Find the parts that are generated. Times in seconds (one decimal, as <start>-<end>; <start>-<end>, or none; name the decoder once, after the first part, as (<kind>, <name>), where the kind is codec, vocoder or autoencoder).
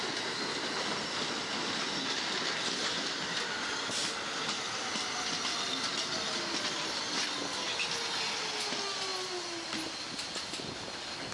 none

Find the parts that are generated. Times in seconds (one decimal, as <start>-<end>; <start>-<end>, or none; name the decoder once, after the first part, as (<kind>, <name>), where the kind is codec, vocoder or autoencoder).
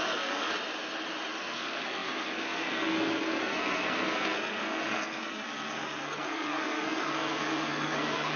0.0-0.5 (codec, SNAC); 1.3-8.4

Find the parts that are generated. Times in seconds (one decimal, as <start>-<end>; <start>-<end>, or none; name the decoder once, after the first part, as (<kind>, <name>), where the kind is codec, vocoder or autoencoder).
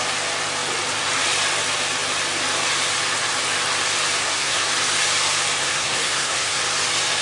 4.2-4.7 (codec, SNAC); 5.6-6.6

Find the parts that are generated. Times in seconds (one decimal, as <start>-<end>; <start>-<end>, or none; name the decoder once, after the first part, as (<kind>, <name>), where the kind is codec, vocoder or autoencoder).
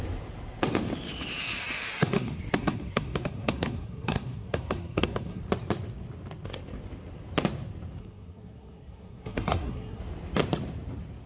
1.9-5.4 (codec, SNAC); 8.0-10.0